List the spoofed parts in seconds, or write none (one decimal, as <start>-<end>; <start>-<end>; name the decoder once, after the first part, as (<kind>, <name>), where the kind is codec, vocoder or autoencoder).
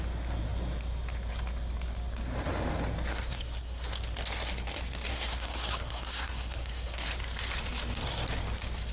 3.1-3.9 (codec, SNAC); 5.1-7.1